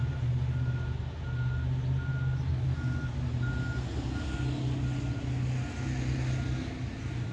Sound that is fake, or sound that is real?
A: real